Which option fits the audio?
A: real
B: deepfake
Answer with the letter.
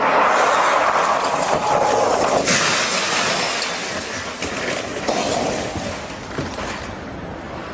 A